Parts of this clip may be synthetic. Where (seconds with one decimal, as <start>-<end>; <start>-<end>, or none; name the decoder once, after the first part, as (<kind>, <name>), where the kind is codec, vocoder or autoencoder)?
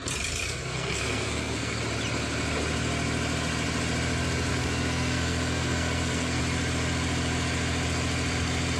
0.4-1.8 (codec, SNAC); 4.5-6.4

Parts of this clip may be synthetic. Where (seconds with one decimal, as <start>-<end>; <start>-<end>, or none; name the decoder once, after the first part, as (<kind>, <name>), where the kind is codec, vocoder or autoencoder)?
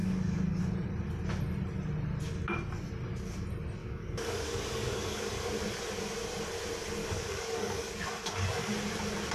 0.0-0.6 (codec, DAC); 3.8-5.3; 7.0-8.7